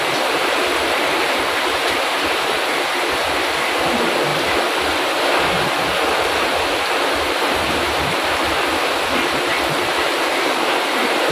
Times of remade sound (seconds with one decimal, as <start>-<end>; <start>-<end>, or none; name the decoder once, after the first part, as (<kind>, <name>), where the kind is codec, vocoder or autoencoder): 0.0-4.3 (vocoder, BigVGAN v2); 5.4-11.3